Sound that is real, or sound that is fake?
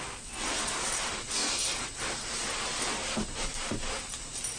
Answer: real